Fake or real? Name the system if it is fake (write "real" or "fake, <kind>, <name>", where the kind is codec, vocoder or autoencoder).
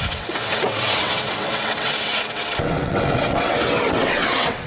fake, vocoder, WaveNeXt